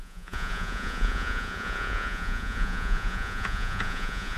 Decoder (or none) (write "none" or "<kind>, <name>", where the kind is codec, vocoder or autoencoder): vocoder, Vocos